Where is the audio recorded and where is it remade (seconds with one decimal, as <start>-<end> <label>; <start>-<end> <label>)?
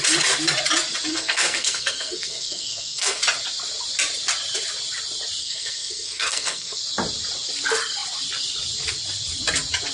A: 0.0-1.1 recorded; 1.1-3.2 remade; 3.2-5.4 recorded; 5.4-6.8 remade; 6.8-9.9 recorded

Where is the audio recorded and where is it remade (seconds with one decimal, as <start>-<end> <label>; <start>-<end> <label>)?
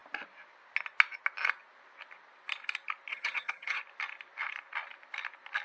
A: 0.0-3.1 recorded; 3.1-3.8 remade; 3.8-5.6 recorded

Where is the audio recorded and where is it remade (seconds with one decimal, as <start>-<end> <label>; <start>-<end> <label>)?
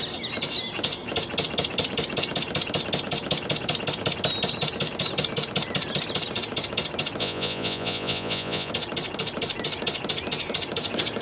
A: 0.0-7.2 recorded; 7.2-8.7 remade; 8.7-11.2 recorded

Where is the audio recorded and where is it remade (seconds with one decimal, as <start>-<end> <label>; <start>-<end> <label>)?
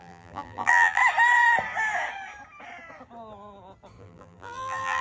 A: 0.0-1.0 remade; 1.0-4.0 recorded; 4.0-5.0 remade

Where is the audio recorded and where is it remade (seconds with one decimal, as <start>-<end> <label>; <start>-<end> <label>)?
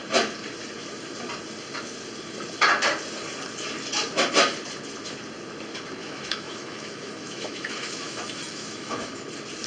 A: 0.0-6.0 recorded; 6.0-9.2 remade; 9.2-9.7 recorded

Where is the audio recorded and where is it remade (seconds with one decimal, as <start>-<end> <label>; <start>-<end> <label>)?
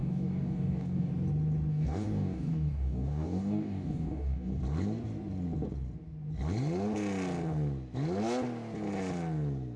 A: 0.0-1.1 remade; 1.1-1.7 recorded; 1.7-4.6 remade; 4.6-9.8 recorded